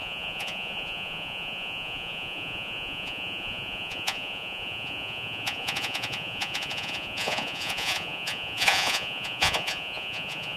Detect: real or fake fake